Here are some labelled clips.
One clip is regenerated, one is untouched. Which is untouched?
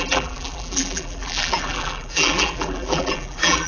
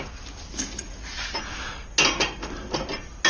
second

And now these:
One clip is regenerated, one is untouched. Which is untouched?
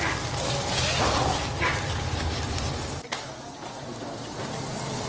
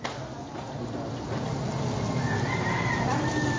second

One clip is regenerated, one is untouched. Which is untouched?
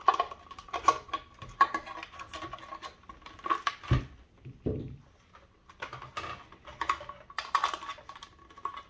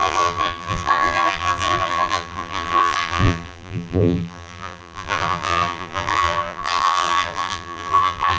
first